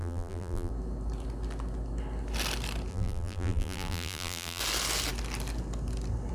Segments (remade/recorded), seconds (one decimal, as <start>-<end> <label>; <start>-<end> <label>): 0.0-0.7 remade; 0.7-2.9 recorded; 2.9-4.6 remade; 4.6-6.3 recorded